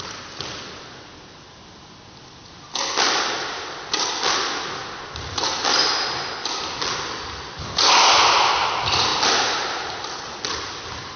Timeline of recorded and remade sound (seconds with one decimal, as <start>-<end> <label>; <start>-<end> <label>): 0.0-11.2 recorded